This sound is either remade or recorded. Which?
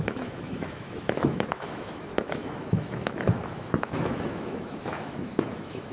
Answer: remade